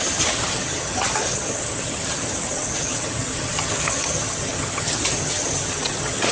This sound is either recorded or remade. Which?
remade